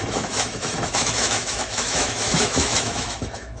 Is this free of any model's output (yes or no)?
no